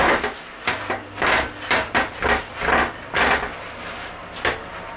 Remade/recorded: recorded